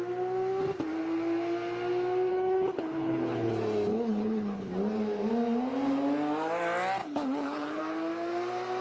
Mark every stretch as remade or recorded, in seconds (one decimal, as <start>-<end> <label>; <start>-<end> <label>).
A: 0.0-2.3 recorded; 2.3-3.5 remade; 3.5-3.9 recorded; 3.9-4.7 remade; 4.7-7.0 recorded; 7.0-7.8 remade; 7.8-8.8 recorded